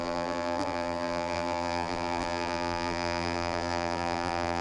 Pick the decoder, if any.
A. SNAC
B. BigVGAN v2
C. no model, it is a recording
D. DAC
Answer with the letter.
B